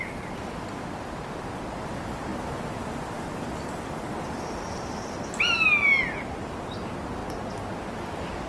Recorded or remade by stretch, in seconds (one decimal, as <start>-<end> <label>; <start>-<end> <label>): 0.0-8.5 recorded